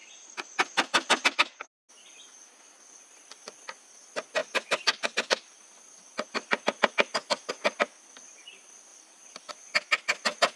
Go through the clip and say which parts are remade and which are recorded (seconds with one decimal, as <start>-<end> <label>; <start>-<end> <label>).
0.0-4.4 recorded; 4.4-7.5 remade; 7.5-8.9 recorded; 8.9-9.5 remade; 9.5-10.6 recorded